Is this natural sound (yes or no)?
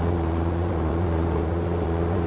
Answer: no